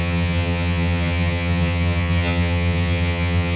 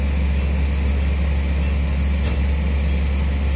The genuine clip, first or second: second